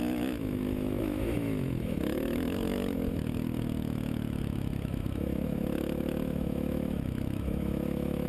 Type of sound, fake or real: fake